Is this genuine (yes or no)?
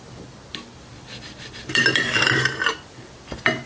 no